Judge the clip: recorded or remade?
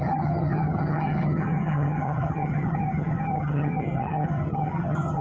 remade